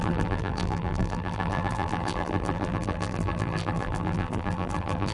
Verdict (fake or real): fake